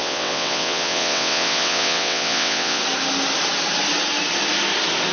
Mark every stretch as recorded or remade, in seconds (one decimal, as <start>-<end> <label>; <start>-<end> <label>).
0.0-2.8 remade; 2.8-5.1 recorded